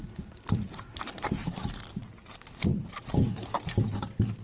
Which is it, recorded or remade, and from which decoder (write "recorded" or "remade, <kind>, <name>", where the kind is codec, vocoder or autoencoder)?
remade, vocoder, BigVGAN v2